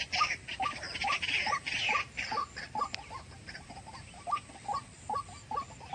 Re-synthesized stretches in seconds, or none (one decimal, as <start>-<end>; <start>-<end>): 1.0-4.5